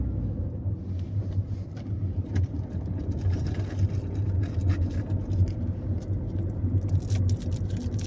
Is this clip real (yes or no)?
yes